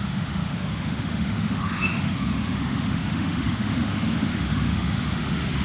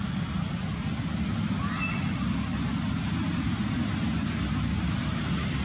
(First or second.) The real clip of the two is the second